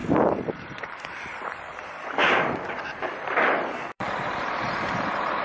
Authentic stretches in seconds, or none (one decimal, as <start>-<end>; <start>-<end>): 0.0-0.6